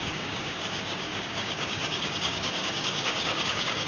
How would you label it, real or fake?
fake